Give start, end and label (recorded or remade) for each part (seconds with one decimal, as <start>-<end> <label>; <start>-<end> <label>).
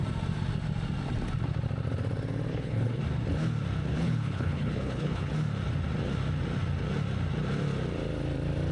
0.0-2.5 recorded; 2.5-3.0 remade; 3.0-3.9 recorded; 3.9-5.3 remade; 5.3-8.7 recorded